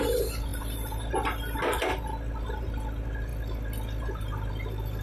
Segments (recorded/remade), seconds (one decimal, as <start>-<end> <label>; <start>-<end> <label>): 0.0-5.0 recorded